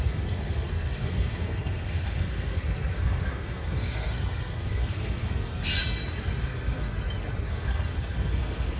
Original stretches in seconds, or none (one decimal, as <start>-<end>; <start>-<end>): 5.7-6.4; 6.9-7.5